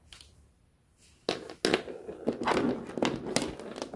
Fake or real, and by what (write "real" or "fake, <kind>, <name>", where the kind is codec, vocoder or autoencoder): real